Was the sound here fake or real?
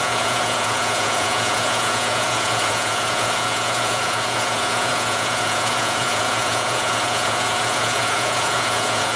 fake